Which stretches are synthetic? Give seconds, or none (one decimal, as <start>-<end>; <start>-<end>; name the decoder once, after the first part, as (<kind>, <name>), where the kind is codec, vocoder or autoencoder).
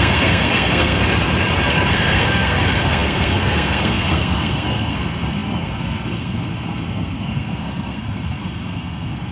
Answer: 0.0-1.0 (codec, SNAC); 1.7-9.3